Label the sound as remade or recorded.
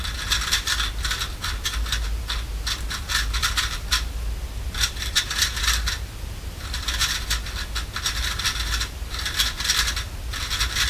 recorded